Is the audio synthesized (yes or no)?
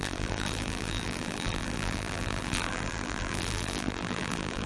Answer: yes